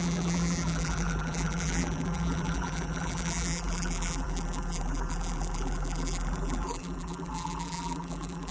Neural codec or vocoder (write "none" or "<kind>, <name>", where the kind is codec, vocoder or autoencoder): vocoder, BigVGAN v2